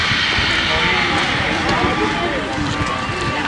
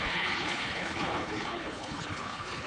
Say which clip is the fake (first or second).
second